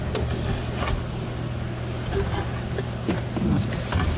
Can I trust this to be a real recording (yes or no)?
yes